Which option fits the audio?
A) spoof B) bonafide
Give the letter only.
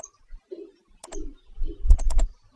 A